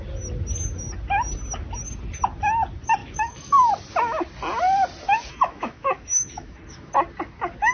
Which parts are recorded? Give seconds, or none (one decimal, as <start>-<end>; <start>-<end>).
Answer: 0.0-3.0; 3.7-5.3; 6.9-7.7